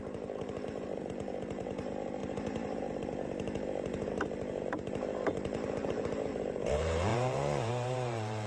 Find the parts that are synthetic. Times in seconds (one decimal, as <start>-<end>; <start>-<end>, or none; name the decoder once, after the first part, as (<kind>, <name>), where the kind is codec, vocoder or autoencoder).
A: 0.0-8.5 (vocoder, BigVGAN v2)